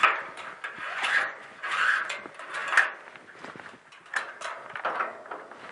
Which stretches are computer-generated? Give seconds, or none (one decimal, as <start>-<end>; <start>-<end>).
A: 0.8-2.2